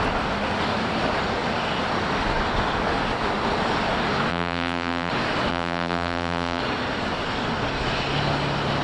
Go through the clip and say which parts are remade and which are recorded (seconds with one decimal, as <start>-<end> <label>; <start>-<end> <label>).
0.0-4.3 recorded; 4.3-5.1 remade; 5.1-5.5 recorded; 5.5-6.6 remade; 6.6-8.8 recorded